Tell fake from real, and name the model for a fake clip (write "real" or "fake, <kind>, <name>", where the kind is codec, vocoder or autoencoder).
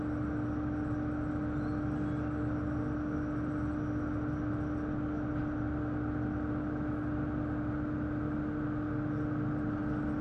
real